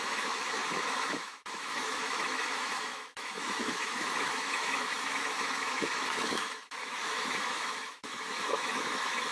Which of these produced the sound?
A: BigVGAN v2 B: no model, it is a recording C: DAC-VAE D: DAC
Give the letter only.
C